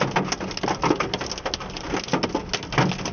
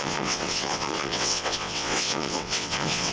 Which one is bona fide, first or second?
first